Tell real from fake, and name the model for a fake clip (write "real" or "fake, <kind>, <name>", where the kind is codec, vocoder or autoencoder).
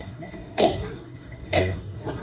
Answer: fake, codec, SNAC